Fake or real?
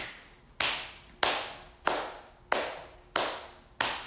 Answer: real